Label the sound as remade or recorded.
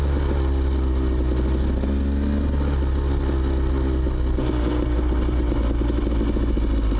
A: recorded